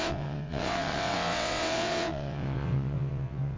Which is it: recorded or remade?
remade